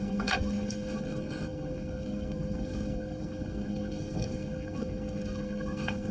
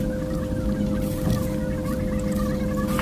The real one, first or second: second